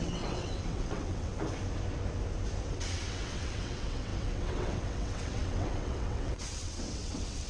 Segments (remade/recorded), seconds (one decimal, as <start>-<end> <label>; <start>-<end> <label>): 0.0-1.3 remade; 1.3-2.7 recorded; 2.7-7.5 remade